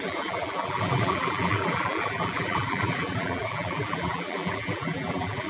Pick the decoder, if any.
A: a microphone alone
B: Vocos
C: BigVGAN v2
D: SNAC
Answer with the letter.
C